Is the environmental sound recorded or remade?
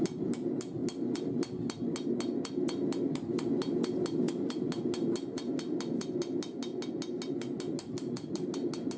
recorded